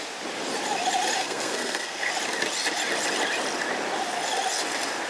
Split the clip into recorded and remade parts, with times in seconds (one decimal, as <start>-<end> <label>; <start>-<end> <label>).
0.0-1.2 recorded; 1.2-2.1 remade; 2.1-5.1 recorded